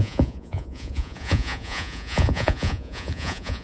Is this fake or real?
fake